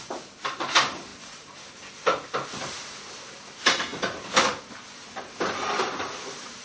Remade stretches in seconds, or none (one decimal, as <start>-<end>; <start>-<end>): none